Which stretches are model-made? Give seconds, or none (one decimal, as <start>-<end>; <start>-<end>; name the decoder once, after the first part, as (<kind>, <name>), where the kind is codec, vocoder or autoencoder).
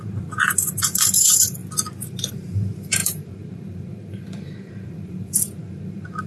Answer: 0.0-1.6 (vocoder, BigVGAN v2); 2.3-6.3